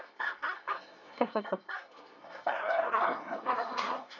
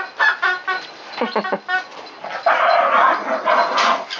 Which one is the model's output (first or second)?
first